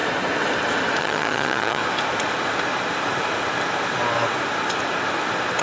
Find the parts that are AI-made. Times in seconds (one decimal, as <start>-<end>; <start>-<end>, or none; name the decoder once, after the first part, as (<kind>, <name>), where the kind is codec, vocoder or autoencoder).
1.0-1.8 (vocoder, HiFi-GAN)